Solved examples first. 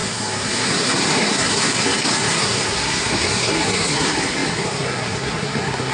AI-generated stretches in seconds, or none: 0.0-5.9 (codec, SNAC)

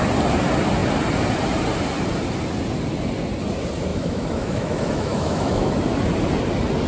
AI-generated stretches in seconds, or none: 3.9-5.7 (autoencoder, DAC-VAE)

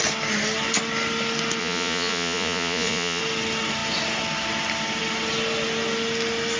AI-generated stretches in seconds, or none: 1.6-3.2 (vocoder, Vocos)

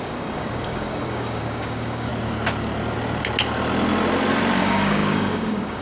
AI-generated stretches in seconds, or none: 0.0-2.1 (codec, DAC); 4.6-5.8

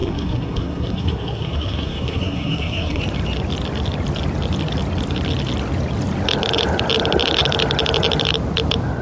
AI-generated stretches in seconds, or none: 0.0-3.0 (codec, SNAC)